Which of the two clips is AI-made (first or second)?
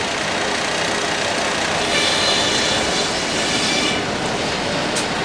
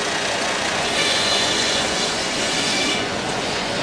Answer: second